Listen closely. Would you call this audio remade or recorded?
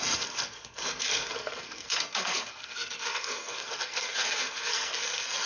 remade